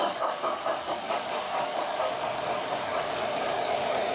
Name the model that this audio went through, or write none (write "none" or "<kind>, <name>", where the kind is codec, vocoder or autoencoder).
codec, DAC